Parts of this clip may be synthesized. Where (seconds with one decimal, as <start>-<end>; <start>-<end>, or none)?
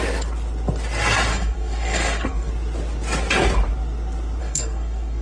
1.3-2.5; 4.4-5.2